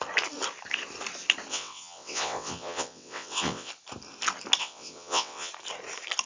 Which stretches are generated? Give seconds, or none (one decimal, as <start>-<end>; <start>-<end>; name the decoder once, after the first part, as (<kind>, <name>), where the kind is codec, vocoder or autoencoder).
1.5-3.7 (vocoder, WaveNeXt); 4.6-5.5